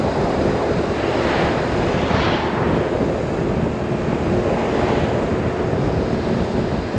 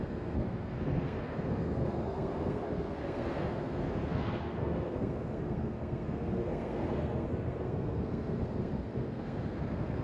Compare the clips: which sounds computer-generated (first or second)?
second